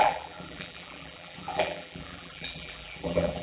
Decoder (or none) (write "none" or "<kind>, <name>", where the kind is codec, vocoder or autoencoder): vocoder, BigVGAN v2